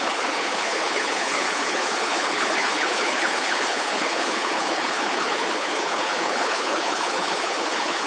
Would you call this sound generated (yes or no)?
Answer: yes